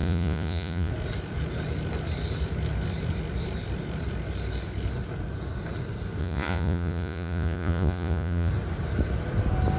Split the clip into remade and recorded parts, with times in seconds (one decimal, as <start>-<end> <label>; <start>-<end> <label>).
0.0-0.9 remade; 0.9-6.2 recorded; 6.2-8.5 remade; 8.5-9.8 recorded